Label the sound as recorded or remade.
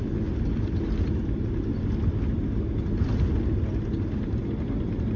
recorded